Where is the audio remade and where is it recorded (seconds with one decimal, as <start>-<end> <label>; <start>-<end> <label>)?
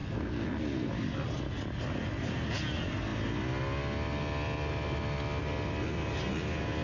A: 0.0-0.9 remade; 0.9-6.8 recorded